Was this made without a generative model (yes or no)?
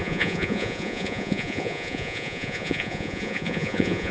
no